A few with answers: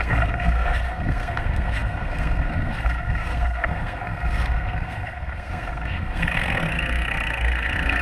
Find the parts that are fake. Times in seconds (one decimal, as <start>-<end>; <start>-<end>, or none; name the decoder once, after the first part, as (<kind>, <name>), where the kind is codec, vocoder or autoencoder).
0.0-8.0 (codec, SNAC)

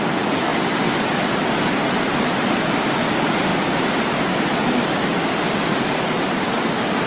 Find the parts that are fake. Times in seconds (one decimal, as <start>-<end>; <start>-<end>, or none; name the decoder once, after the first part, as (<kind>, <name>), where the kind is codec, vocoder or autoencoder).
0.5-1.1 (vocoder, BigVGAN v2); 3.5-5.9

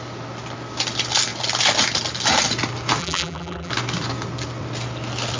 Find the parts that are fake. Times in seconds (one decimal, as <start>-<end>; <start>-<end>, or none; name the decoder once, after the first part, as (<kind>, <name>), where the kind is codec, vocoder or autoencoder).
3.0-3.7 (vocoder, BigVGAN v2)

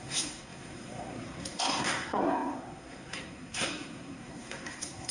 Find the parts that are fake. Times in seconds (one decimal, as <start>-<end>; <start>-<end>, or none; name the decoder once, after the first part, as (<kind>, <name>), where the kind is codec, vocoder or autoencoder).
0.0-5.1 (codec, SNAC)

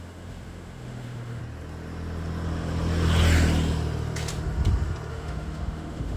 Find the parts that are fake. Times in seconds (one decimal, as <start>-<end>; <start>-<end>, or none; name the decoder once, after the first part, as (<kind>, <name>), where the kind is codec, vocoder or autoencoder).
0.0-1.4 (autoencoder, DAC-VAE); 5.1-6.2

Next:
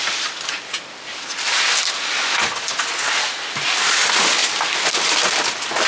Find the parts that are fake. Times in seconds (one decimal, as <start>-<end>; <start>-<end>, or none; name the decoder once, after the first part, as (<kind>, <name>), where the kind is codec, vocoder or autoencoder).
4.4-5.4 (vocoder, BigVGAN v2)